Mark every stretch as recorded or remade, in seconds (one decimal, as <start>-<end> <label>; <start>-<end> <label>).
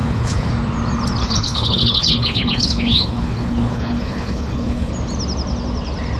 0.0-0.5 remade; 0.5-1.2 recorded; 1.2-4.9 remade; 4.9-6.2 recorded